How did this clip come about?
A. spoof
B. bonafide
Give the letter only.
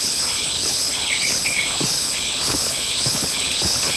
A